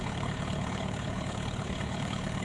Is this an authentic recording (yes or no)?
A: no